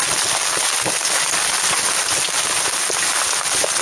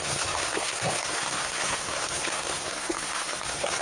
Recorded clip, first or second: first